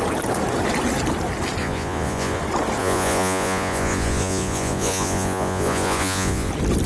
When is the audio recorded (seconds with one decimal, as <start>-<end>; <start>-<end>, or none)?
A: 0.0-1.6; 2.4-2.8; 6.5-6.9